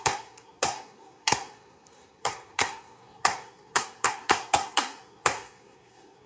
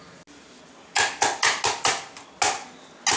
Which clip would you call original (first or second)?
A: second